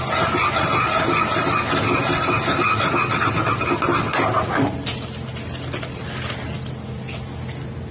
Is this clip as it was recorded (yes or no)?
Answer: yes